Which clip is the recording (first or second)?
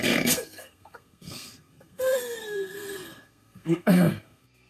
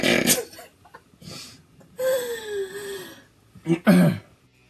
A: second